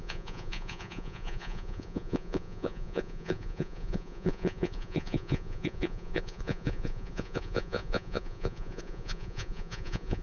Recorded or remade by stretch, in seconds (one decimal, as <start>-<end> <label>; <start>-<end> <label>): 0.0-10.2 remade